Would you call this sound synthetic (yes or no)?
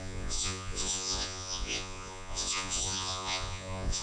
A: yes